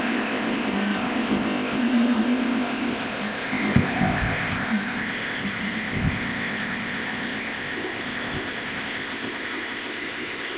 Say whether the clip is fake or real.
fake